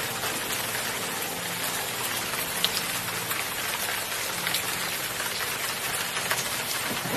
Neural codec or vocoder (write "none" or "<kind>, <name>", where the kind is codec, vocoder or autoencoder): none